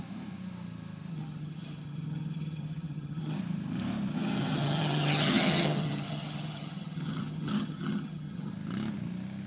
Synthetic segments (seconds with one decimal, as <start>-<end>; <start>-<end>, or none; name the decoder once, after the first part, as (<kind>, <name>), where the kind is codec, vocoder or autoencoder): 1.1-3.4 (vocoder, HiFi-GAN); 4.1-8.5